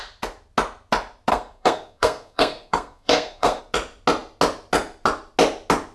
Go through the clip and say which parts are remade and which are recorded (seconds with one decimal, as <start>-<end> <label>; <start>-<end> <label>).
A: 0.0-1.3 recorded; 1.3-3.6 remade; 3.6-5.9 recorded